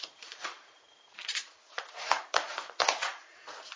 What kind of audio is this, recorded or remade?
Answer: remade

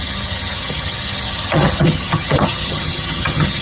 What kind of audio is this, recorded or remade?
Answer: remade